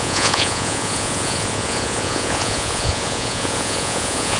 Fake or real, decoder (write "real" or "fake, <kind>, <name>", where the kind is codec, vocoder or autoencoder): fake, vocoder, Vocos